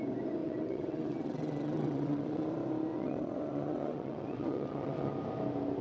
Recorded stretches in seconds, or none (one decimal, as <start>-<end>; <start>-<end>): 0.0-0.4; 2.5-2.9; 5.1-5.8